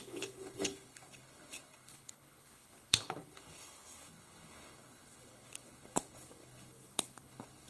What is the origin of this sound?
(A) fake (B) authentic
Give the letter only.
A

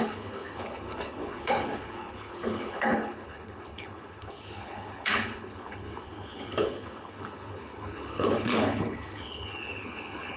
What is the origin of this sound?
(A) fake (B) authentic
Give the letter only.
A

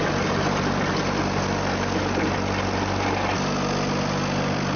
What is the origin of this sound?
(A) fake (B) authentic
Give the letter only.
B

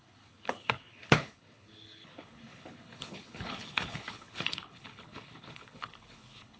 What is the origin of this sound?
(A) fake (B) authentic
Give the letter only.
A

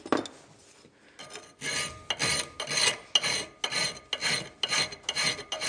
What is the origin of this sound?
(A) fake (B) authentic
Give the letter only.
B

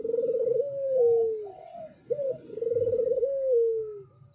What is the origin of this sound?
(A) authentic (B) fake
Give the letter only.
A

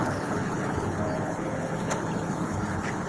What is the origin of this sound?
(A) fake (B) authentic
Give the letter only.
A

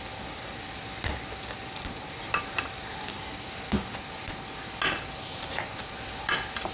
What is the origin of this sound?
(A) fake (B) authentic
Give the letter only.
B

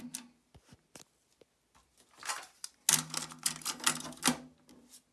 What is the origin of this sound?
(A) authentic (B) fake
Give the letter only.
A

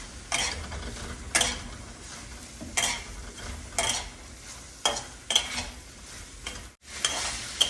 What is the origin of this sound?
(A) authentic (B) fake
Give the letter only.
A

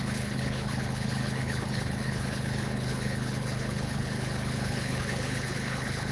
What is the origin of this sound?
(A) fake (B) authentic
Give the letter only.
A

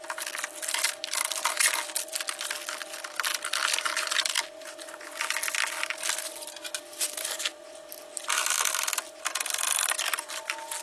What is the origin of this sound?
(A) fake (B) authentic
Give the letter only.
B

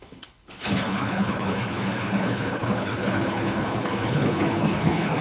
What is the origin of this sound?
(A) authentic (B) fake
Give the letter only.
B